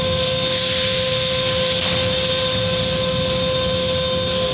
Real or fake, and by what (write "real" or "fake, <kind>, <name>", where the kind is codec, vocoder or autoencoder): real